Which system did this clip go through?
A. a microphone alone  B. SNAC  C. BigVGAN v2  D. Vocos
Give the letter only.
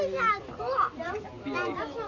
A